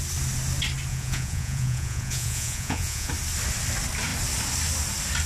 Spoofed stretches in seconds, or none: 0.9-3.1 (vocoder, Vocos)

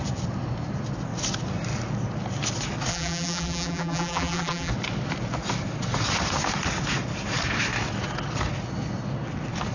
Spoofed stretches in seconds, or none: 2.9-4.7 (vocoder, BigVGAN v2)